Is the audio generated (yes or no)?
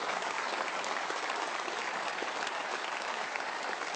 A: yes